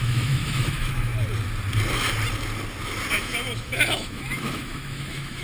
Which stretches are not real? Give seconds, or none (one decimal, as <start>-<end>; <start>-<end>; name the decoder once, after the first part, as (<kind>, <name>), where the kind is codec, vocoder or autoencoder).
0.0-1.1 (autoencoder, DAC-VAE); 3.1-5.4